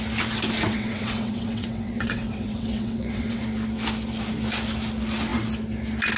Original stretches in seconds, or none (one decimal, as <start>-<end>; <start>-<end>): 0.0-0.7; 3.4-6.2